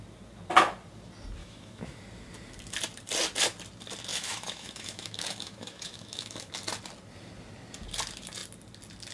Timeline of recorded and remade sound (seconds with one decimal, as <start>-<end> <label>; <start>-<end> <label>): 0.0-1.4 recorded; 1.4-2.0 remade; 2.0-4.1 recorded; 4.1-6.5 remade; 6.5-9.1 recorded